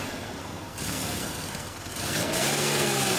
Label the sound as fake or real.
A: fake